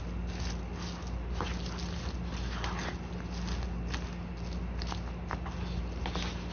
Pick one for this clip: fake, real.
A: real